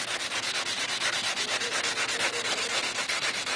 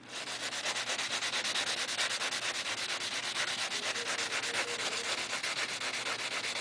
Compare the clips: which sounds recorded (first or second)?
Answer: second